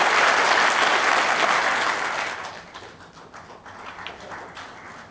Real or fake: real